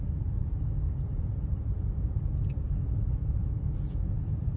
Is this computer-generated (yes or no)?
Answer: yes